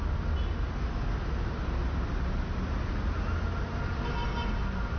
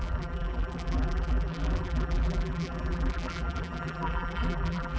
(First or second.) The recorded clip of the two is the first